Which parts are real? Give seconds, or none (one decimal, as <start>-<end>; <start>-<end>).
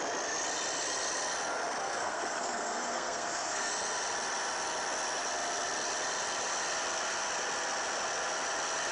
0.0-1.8; 3.7-8.9